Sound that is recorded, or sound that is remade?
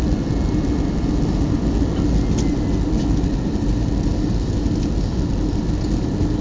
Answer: recorded